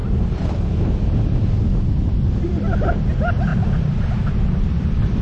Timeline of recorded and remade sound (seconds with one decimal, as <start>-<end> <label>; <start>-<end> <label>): 0.0-2.1 recorded; 2.1-5.2 remade